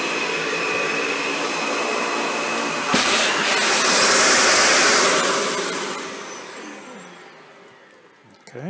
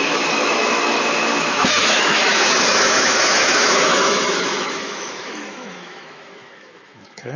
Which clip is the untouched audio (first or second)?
first